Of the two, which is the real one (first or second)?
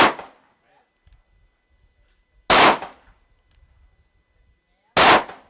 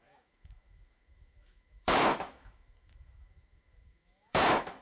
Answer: first